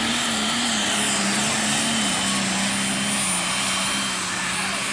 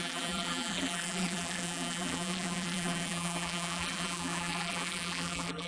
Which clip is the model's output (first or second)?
second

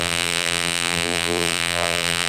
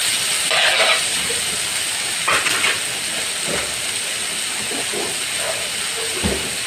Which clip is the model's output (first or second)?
first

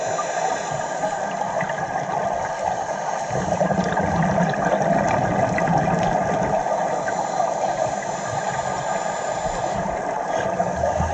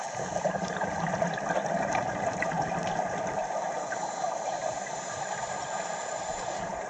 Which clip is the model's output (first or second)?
second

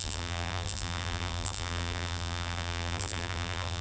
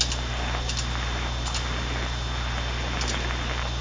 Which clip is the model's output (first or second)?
first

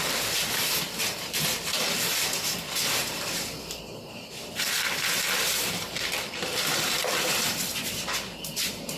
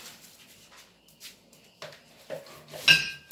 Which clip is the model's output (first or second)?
first